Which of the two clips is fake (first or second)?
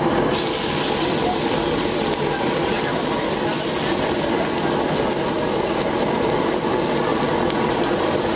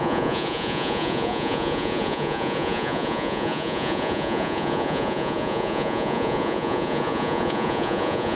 second